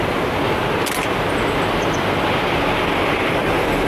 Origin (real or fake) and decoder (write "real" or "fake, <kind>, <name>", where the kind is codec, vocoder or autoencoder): real